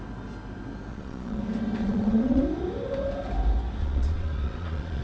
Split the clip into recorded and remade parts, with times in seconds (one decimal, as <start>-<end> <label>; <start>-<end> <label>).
0.0-0.9 recorded; 0.9-1.4 remade; 1.4-1.8 recorded; 1.8-2.4 remade; 2.4-3.8 recorded; 3.8-5.0 remade